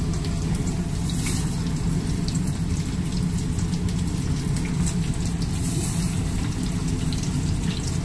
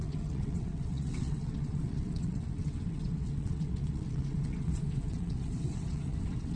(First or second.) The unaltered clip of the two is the first